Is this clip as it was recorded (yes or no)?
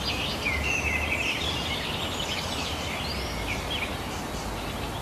yes